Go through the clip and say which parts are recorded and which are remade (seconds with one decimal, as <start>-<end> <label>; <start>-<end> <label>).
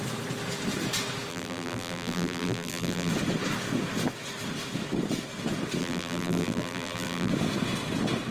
0.0-1.3 recorded; 1.3-3.1 remade; 3.1-5.8 recorded; 5.8-7.3 remade; 7.3-8.3 recorded